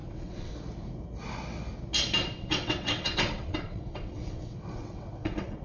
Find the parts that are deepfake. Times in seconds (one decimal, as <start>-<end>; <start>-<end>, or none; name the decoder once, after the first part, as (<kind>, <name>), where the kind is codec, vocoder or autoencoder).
0.0-0.5 (vocoder, WaveNeXt); 2.2-5.6